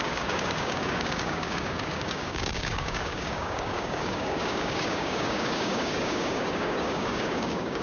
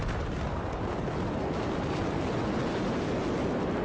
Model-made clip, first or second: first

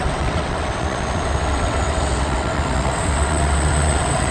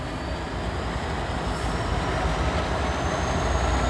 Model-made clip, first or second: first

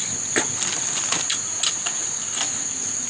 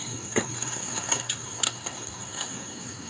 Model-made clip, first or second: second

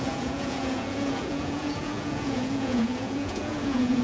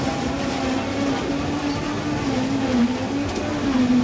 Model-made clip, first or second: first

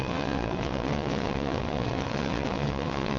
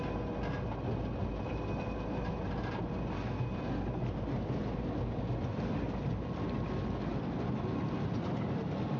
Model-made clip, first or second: first